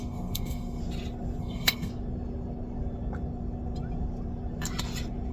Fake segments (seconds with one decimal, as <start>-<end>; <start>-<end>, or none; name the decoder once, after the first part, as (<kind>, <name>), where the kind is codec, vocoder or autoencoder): 0.0-0.8 (codec, SNAC); 1.4-1.9